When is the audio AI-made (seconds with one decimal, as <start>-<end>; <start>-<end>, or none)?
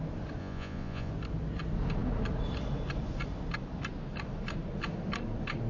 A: 0.4-1.1